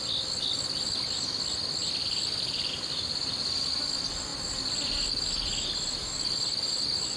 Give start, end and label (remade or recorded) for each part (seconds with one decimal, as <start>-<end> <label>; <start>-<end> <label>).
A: 0.0-1.8 recorded; 1.8-2.7 remade; 2.7-7.2 recorded

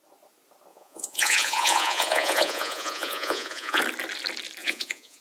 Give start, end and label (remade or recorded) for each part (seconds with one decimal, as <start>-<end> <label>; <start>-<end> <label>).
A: 0.0-0.7 recorded; 0.7-3.8 remade; 3.8-4.6 recorded; 4.6-5.2 remade